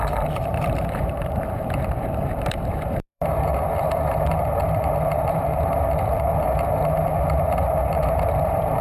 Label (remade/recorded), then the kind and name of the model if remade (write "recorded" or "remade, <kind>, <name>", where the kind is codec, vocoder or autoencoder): remade, vocoder, BigVGAN v2